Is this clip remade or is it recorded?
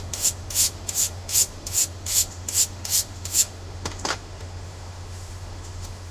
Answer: remade